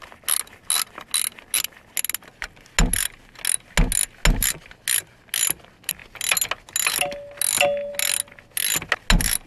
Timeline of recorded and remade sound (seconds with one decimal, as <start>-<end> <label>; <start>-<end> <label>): 0.0-9.5 recorded